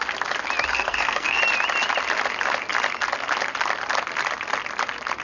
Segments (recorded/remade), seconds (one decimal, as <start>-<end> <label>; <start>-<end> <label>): 0.0-0.7 recorded; 0.7-1.4 remade; 1.4-5.2 recorded